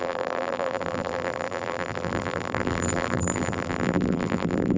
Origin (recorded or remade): remade